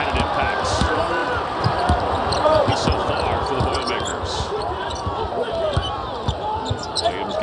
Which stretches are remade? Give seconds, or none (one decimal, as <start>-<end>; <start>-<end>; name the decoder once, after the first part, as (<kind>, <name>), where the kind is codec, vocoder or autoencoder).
1.2-2.7 (vocoder, BigVGAN v2); 4.1-6.9

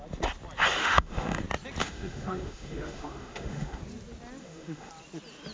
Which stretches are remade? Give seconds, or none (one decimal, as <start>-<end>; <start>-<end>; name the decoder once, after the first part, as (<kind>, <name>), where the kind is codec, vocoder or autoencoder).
0.8-1.4 (autoencoder, DAC-VAE); 1.8-3.8; 4.4-4.9

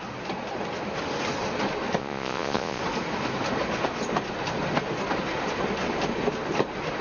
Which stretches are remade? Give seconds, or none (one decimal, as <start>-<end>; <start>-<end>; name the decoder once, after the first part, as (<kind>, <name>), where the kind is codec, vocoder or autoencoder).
2.0-2.8 (vocoder, Vocos)